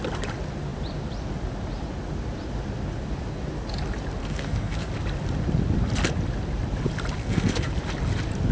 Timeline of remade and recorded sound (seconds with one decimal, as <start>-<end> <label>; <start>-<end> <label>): 0.0-4.2 recorded; 4.2-4.9 remade; 4.9-7.2 recorded; 7.2-7.7 remade; 7.7-8.5 recorded